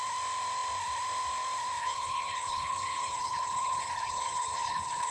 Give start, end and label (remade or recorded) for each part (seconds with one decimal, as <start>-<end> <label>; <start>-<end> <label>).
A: 0.0-1.8 recorded; 1.8-5.1 remade